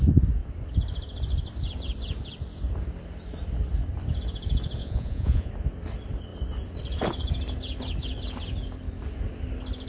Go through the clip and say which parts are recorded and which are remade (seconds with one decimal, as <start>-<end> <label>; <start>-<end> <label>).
0.0-4.8 recorded; 4.8-5.5 remade; 5.5-9.9 recorded